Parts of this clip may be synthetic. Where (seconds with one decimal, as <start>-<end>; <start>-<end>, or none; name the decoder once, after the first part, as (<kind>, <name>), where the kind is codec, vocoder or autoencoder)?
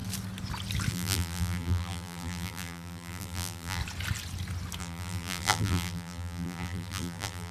0.9-3.8 (vocoder, BigVGAN v2); 4.8-7.5